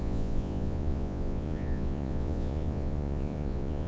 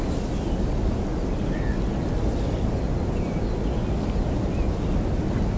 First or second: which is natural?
second